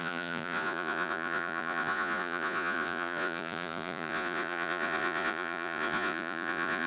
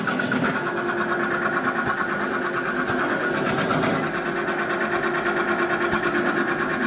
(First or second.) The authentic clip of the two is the second